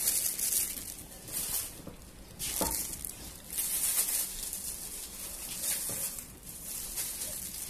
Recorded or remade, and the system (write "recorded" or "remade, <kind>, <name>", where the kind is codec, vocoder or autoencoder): recorded